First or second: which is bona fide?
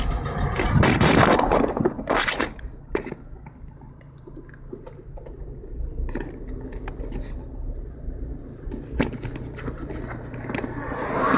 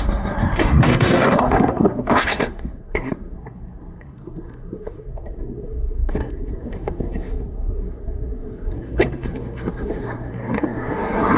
first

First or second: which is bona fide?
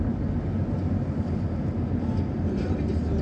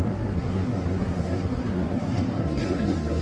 first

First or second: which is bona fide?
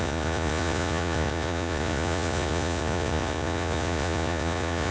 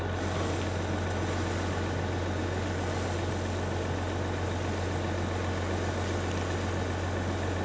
second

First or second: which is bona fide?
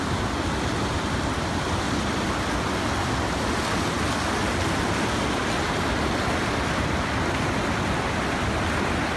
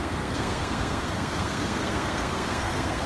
first